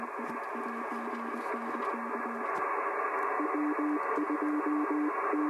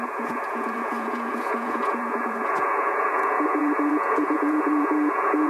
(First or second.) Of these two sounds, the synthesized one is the second